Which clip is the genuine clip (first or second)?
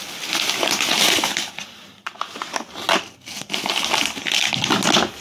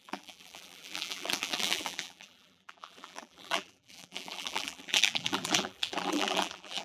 first